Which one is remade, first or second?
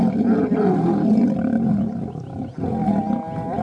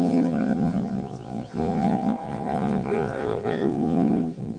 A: second